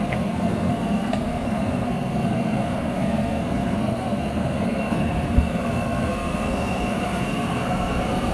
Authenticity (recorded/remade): remade